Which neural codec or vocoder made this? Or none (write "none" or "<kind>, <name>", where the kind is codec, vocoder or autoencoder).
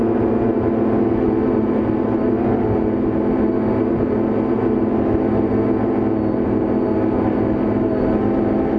none